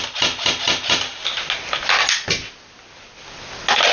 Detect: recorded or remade recorded